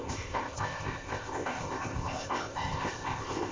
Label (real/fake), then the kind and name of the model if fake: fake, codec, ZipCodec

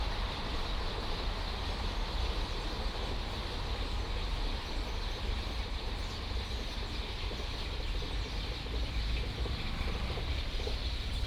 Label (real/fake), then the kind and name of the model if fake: real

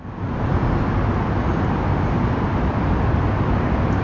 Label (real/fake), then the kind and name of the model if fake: real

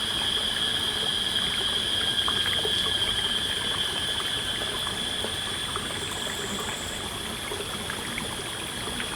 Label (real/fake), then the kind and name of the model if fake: real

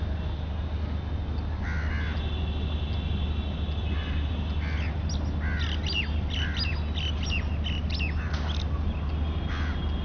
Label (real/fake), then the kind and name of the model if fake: real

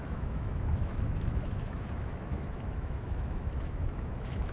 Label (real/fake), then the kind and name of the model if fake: fake, autoencoder, DAC-VAE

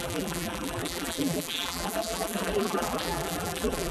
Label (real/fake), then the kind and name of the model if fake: fake, vocoder, BigVGAN v2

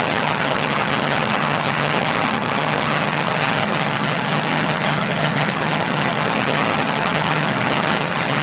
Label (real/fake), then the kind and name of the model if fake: fake, vocoder, HiFi-GAN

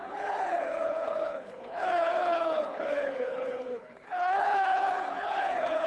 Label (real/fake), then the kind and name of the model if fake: fake, codec, HILCodec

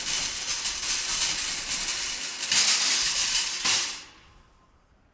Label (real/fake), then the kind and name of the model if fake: real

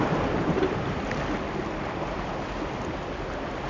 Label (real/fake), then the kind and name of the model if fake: real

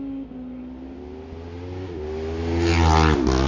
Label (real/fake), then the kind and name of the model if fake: real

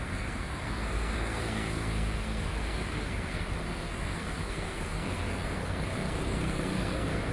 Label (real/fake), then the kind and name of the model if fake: fake, codec, SNAC